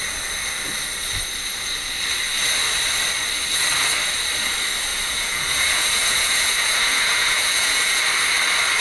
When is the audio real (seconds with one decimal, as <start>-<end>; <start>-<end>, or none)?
0.0-4.9; 8.0-8.8